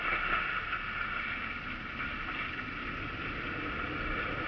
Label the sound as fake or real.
fake